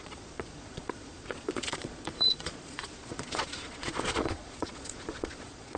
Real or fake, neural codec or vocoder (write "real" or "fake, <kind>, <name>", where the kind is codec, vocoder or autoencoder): fake, vocoder, Vocos